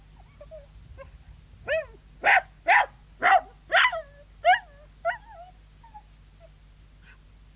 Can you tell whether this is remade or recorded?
recorded